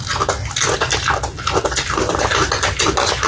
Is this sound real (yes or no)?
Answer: yes